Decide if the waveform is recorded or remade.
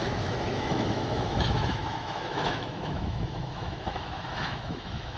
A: remade